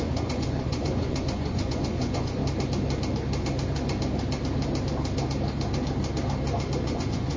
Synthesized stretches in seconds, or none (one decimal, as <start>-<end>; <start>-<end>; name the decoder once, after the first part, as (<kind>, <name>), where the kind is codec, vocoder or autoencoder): 0.0-2.4 (vocoder, Vocos); 6.8-7.4